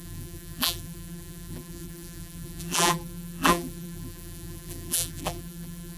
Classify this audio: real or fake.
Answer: fake